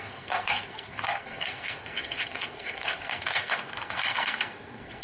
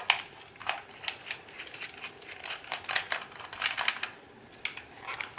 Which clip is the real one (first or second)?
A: second